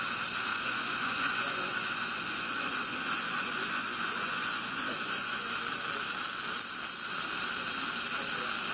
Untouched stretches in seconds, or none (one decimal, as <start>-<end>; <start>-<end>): 0.0-0.5; 5.5-8.7